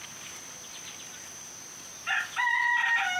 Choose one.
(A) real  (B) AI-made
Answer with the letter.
A